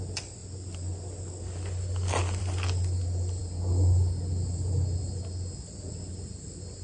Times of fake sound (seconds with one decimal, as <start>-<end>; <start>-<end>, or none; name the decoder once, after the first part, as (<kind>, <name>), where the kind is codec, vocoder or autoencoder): none